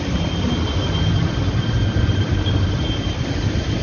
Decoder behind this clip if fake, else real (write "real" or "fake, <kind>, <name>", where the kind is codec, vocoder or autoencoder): real